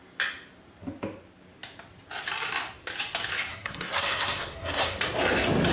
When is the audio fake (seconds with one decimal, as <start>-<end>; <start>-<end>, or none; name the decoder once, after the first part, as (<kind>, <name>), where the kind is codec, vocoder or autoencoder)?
3.5-5.0 (codec, SNAC)